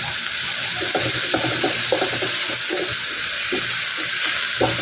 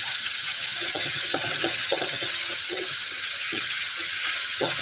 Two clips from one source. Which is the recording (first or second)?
first